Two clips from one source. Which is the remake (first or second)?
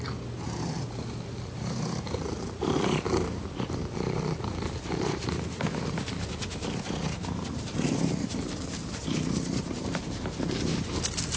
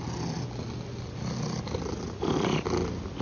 first